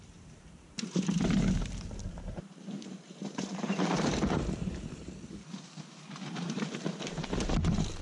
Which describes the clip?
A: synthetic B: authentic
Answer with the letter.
A